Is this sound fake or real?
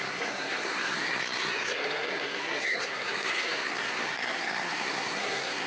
fake